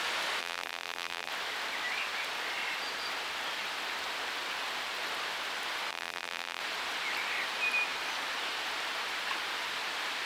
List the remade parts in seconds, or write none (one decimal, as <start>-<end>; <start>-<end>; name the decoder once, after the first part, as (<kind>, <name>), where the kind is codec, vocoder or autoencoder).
0.4-1.3 (vocoder, BigVGAN v2); 5.9-6.6